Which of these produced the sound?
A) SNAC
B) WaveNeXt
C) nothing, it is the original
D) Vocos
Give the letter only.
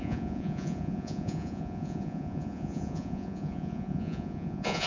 D